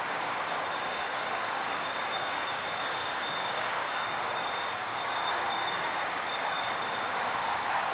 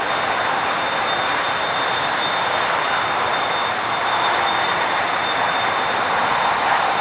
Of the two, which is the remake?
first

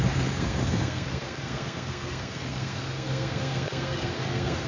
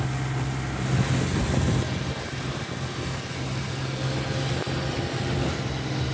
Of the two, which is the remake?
first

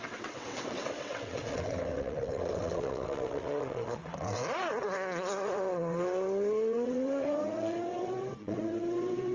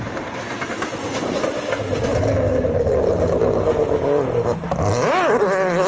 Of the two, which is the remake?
first